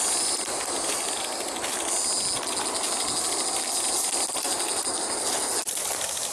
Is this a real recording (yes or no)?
yes